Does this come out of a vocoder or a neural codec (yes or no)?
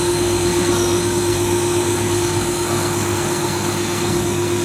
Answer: yes